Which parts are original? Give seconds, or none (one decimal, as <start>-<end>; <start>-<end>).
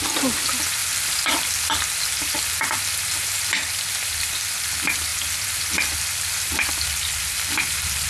0.0-8.1